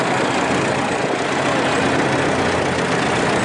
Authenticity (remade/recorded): recorded